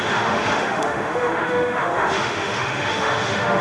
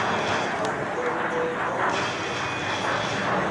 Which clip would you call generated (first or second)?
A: first